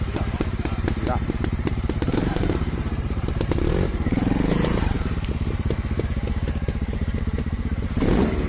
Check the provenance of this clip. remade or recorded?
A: remade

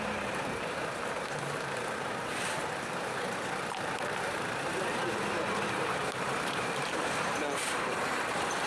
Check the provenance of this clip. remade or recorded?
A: remade